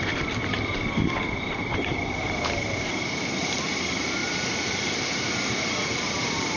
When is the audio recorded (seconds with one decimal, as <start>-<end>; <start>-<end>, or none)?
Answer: none